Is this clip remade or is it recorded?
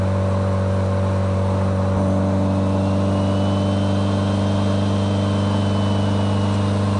recorded